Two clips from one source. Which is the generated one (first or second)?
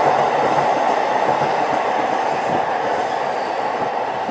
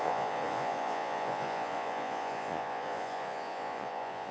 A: second